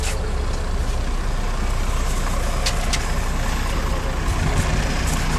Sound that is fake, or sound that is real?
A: real